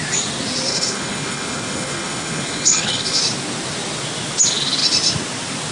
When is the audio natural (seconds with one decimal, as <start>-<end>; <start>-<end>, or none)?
0.0-0.7; 3.2-5.7